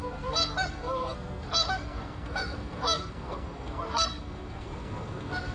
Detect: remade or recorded remade